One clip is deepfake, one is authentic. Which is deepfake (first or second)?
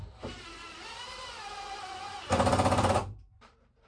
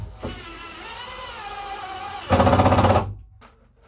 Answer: first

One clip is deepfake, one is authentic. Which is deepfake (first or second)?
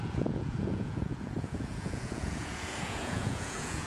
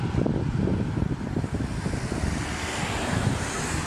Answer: first